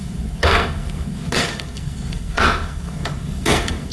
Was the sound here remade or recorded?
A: remade